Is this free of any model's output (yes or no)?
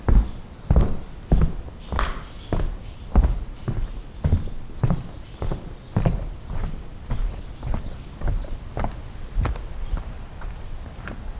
yes